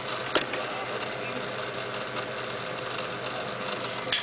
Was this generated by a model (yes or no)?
no